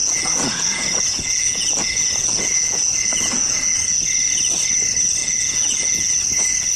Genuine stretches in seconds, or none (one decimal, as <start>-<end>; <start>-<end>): 4.0-5.2; 6.1-6.8